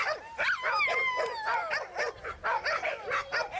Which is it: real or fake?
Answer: real